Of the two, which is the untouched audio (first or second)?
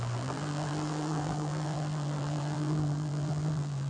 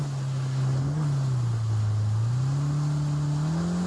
second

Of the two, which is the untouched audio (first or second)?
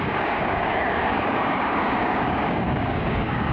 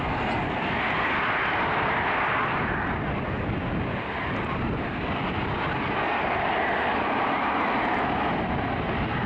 second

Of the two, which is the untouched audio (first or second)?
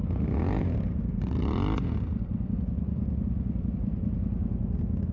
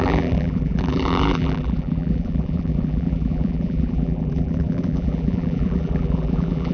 first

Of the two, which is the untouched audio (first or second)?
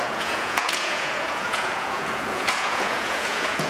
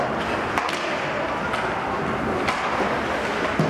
second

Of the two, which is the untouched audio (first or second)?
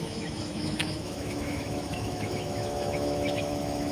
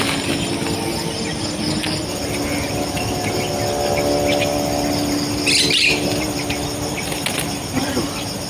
second